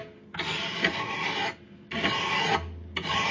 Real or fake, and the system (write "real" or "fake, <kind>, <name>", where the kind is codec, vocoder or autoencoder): real